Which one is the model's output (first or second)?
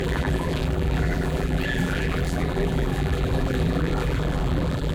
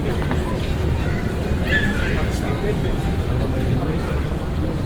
first